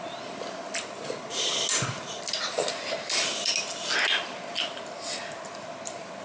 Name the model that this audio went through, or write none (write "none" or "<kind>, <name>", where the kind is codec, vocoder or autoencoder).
none